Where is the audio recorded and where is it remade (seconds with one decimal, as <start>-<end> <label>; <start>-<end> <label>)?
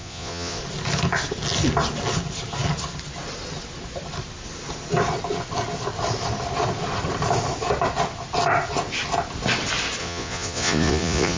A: 0.0-0.6 remade; 0.6-10.0 recorded; 10.0-11.4 remade